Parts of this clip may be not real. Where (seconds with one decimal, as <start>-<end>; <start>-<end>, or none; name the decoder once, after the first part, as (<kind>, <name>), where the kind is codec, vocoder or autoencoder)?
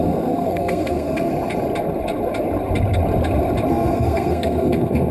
0.0-1.3 (codec, SNAC); 3.7-5.1